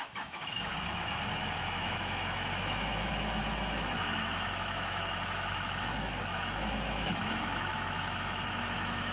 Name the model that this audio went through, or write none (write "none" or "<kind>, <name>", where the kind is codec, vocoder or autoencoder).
autoencoder, DAC-VAE